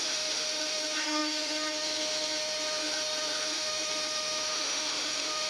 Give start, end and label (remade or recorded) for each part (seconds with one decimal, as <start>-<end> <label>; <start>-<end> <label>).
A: 0.0-5.5 remade